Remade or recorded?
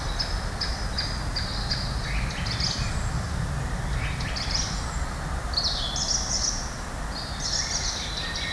recorded